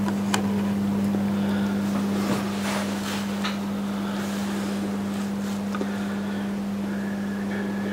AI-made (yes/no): no